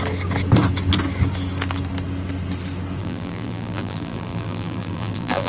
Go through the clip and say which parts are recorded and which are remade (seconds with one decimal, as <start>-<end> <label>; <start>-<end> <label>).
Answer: 0.0-3.0 recorded; 3.0-5.5 remade